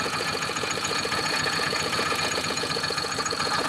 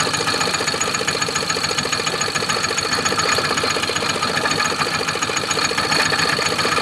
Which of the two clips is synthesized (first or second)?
first